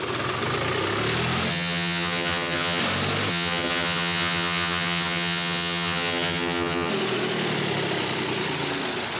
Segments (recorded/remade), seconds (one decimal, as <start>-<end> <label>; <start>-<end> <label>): 0.0-1.5 recorded; 1.5-2.8 remade; 2.8-3.3 recorded; 3.3-6.9 remade; 6.9-9.2 recorded